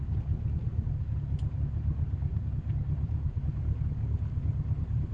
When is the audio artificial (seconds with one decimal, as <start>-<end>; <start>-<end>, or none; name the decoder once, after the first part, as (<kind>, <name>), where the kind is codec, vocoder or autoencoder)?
none